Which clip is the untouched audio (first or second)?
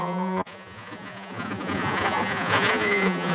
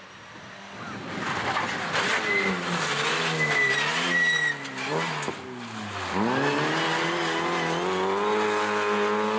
second